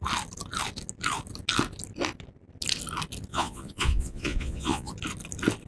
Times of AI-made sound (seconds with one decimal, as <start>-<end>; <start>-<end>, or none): 3.3-4.9